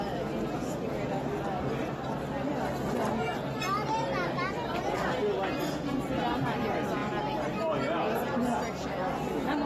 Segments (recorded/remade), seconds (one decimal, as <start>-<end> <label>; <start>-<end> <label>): 0.0-9.7 recorded